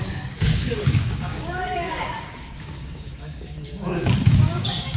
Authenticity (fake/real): fake